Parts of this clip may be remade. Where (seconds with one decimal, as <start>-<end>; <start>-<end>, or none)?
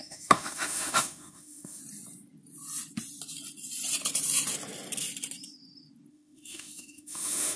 0.0-1.8; 6.1-7.6